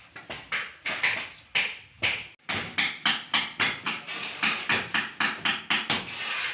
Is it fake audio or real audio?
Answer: real